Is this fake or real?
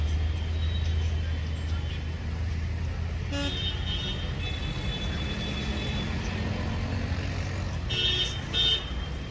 real